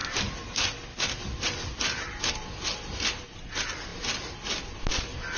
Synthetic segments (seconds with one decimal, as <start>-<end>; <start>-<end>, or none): none